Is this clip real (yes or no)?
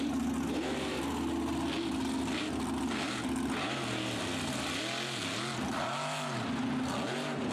yes